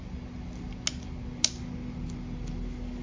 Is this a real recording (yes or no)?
yes